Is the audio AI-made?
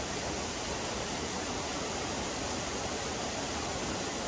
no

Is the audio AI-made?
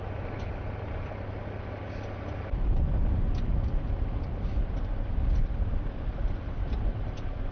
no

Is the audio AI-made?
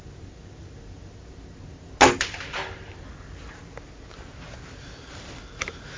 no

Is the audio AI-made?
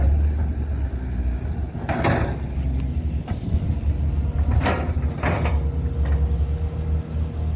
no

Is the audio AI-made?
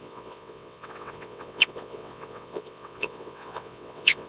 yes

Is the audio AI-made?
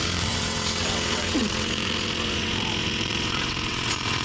yes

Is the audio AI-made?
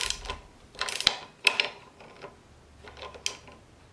no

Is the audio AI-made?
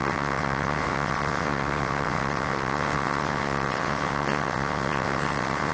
yes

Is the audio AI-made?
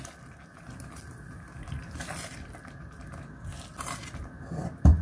no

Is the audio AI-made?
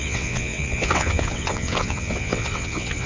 yes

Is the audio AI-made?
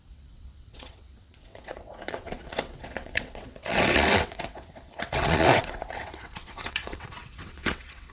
yes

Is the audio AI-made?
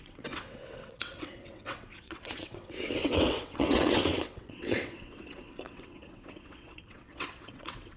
yes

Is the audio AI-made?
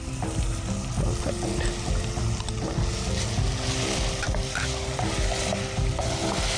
no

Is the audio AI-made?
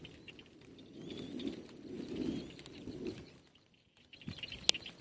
no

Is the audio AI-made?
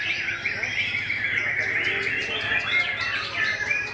no